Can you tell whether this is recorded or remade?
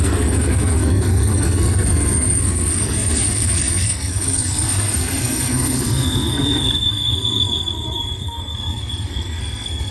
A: remade